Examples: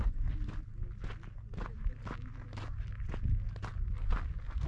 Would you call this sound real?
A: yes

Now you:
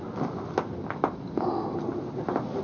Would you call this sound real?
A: yes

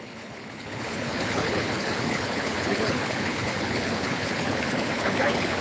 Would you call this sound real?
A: no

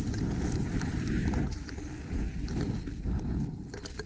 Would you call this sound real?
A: yes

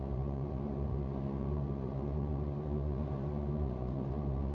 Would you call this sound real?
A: no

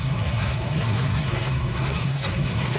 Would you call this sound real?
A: no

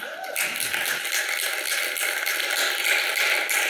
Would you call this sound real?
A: yes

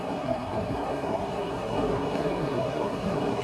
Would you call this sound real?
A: no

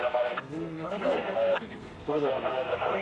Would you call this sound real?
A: no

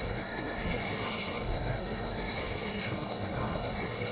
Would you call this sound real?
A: no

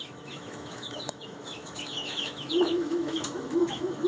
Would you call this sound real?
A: no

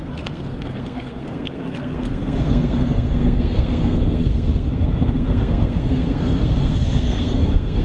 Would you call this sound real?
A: no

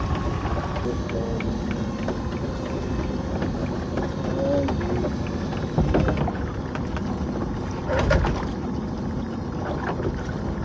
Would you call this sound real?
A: yes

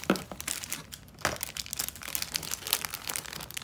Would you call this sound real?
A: yes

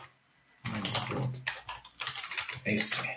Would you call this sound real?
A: yes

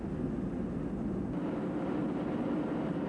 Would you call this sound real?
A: yes